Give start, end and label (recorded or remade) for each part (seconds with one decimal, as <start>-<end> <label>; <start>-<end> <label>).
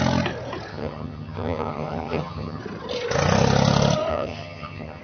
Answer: 0.0-0.7 recorded; 0.7-2.6 remade; 2.6-4.1 recorded; 4.1-5.0 remade